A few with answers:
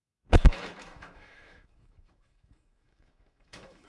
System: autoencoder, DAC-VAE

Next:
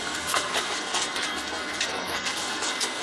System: codec, SNAC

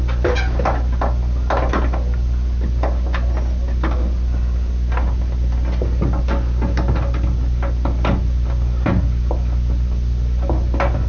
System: none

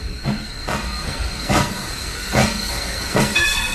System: codec, SNAC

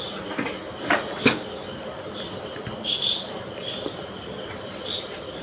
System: none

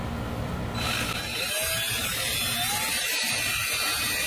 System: none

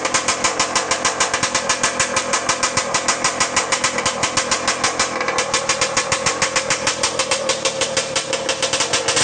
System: none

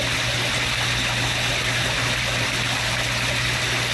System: none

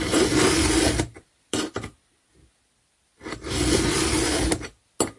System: none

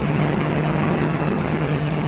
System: vocoder, HiFi-GAN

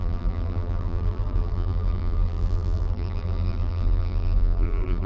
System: vocoder, BigVGAN v2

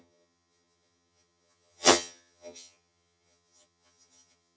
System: vocoder, HiFi-GAN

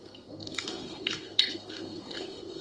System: codec, SNAC